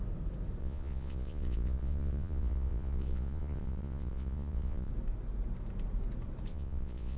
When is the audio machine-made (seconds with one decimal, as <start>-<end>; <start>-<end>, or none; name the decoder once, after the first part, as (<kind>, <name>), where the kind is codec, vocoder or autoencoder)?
0.6-4.9 (vocoder, Vocos); 6.5-7.2